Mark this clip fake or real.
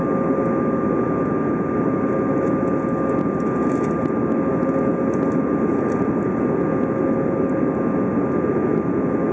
real